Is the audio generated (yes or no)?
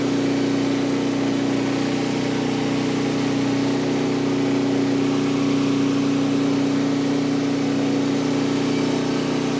no